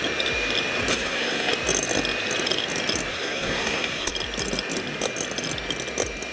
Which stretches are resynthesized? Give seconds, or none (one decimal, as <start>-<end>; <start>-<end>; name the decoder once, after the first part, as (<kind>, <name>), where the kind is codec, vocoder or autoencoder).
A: 0.9-1.5 (codec, SNAC); 3.1-4.1